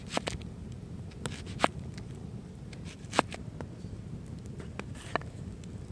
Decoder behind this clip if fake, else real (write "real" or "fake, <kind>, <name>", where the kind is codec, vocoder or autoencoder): real